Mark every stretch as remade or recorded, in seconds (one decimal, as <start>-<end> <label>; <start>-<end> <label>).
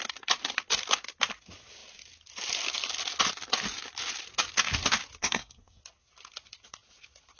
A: 0.0-5.2 recorded; 5.2-5.8 remade; 5.8-7.4 recorded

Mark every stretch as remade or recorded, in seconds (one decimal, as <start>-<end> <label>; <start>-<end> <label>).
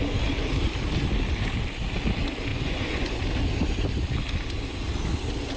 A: 0.0-2.5 recorded; 2.5-3.2 remade; 3.2-5.6 recorded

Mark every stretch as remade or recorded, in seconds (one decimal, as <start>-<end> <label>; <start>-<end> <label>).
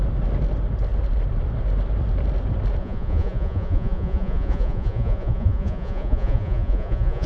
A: 0.0-2.8 recorded; 2.8-7.3 remade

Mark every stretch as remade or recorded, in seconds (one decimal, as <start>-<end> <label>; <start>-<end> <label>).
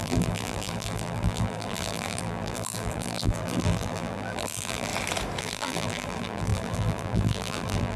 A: 0.0-4.9 remade; 4.9-5.4 recorded; 5.4-8.0 remade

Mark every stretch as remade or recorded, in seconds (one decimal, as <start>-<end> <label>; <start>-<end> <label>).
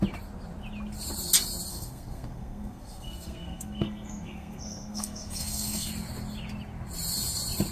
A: 0.0-1.7 recorded; 1.7-5.9 remade; 5.9-7.7 recorded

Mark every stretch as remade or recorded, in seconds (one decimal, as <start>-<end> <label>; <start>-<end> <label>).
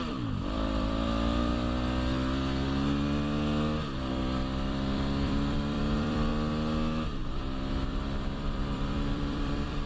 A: 0.0-1.5 remade; 1.5-4.1 recorded; 4.1-6.3 remade; 6.3-7.7 recorded; 7.7-9.9 remade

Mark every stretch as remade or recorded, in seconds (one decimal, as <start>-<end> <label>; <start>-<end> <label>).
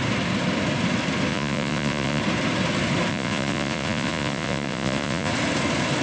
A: 0.0-1.3 recorded; 1.3-2.2 remade; 2.2-3.1 recorded; 3.1-5.3 remade; 5.3-6.0 recorded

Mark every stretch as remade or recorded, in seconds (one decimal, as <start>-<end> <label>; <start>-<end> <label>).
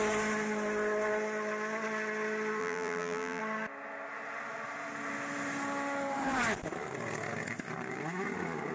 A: 0.0-2.6 recorded; 2.6-3.4 remade; 3.4-8.7 recorded